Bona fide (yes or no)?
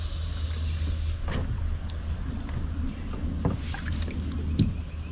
yes